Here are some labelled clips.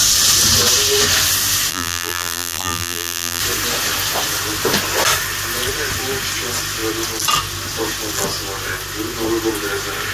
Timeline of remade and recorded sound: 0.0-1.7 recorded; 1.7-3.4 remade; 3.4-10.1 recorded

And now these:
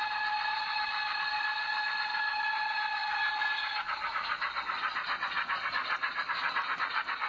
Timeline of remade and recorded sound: 0.0-7.3 recorded